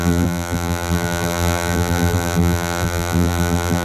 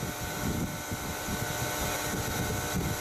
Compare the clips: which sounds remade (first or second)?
first